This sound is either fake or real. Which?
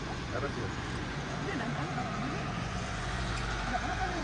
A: fake